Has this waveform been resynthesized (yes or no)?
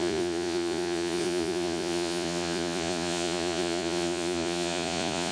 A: yes